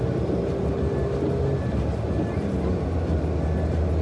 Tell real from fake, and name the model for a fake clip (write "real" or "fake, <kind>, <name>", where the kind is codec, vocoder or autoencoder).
real